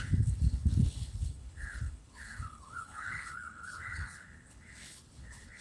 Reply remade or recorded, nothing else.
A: remade